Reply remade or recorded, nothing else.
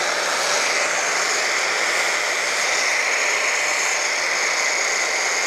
recorded